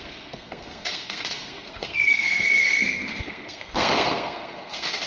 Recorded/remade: remade